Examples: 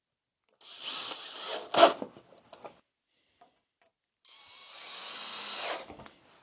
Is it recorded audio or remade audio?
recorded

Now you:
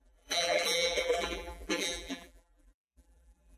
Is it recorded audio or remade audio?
remade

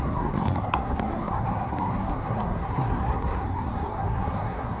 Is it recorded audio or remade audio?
remade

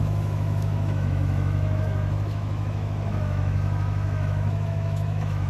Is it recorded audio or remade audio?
remade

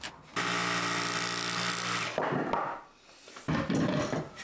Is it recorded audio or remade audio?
recorded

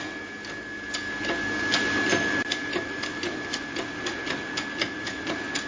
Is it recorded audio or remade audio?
recorded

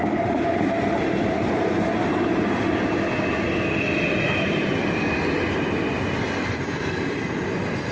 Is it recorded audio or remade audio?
recorded